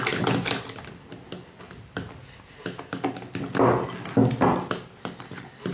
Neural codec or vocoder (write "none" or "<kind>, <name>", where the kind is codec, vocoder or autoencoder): none